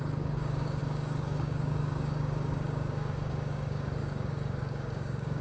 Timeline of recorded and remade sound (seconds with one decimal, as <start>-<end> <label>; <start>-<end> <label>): 0.0-5.4 remade